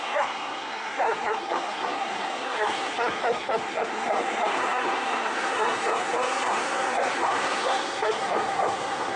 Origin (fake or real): fake